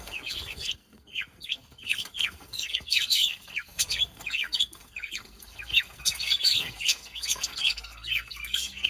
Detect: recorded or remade remade